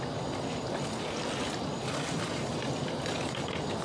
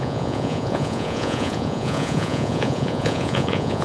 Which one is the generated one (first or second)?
second